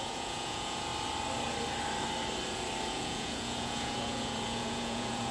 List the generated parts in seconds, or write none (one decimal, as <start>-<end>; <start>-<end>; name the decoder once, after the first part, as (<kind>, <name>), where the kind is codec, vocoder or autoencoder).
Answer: 0.0-0.9 (vocoder, Vocos); 2.8-5.3